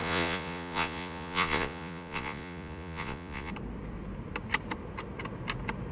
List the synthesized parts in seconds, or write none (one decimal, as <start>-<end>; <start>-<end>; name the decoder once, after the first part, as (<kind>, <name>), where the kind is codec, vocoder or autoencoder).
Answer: 0.0-3.5 (vocoder, Vocos)